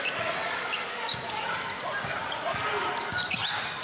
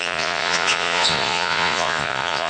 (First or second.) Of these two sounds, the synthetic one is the second